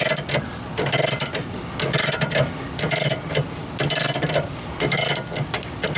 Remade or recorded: recorded